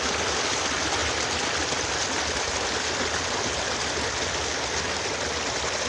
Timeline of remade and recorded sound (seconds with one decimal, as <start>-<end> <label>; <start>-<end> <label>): 0.0-5.9 recorded